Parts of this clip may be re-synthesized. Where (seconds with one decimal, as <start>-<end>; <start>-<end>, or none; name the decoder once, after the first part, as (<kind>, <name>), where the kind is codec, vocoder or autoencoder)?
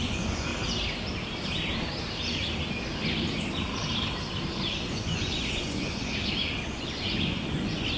0.0-0.5 (vocoder, Vocos); 4.9-6.1; 6.6-8.0